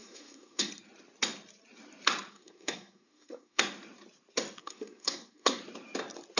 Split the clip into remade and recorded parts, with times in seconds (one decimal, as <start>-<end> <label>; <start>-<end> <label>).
0.0-0.7 remade; 0.7-2.3 recorded; 2.3-3.6 remade; 3.6-4.6 recorded; 4.6-5.6 remade; 5.6-6.4 recorded